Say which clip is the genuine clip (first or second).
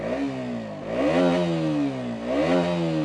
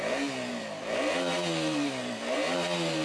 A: first